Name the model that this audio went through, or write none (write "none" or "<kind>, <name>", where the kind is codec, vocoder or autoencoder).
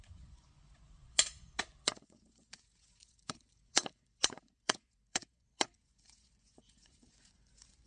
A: vocoder, Vocos